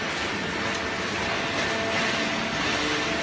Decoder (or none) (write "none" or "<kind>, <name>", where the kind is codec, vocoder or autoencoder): none